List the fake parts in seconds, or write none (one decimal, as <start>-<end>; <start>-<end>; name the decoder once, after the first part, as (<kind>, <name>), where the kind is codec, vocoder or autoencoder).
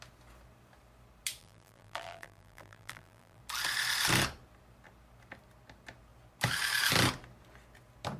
1.4-3.4 (vocoder, BigVGAN v2)